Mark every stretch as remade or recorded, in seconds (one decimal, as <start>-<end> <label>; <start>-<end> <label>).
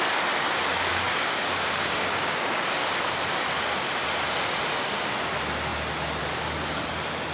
0.0-0.9 recorded; 0.9-2.6 remade; 2.6-7.3 recorded